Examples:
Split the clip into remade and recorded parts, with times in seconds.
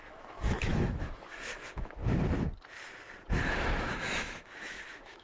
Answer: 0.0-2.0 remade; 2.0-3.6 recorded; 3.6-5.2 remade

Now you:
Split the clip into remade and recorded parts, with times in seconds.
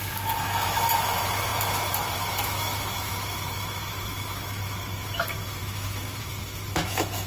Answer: 0.0-7.3 remade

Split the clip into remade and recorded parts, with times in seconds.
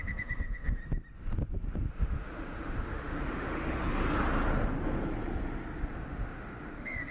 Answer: 0.0-0.8 remade; 0.8-1.9 recorded; 1.9-3.7 remade; 3.7-5.9 recorded; 5.9-7.1 remade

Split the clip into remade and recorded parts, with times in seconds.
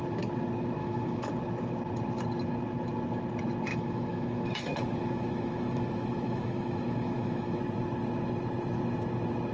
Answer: 0.0-0.8 recorded; 0.8-1.3 remade; 1.3-3.7 recorded; 3.7-7.6 remade; 7.6-9.5 recorded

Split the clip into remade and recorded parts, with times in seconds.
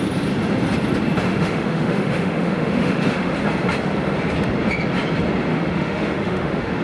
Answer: 0.0-1.3 recorded; 1.3-3.3 remade; 3.3-5.5 recorded; 5.5-6.8 remade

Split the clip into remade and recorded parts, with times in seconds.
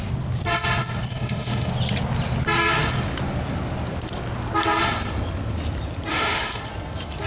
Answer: 0.0-1.1 recorded; 1.1-1.7 remade; 1.7-6.1 recorded; 6.1-6.6 remade; 6.6-7.3 recorded